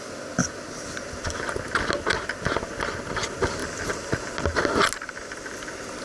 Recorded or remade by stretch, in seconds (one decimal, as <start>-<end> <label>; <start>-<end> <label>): 0.0-6.0 recorded